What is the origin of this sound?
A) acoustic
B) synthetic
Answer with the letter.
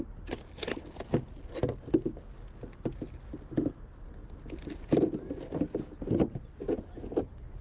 A